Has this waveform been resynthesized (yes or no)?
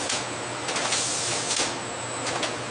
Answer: no